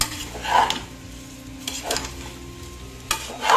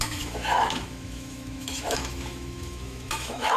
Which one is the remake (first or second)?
second